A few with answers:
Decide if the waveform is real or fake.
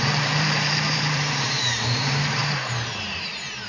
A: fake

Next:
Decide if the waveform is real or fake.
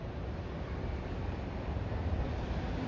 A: real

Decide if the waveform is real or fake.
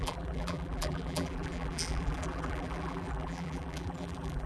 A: fake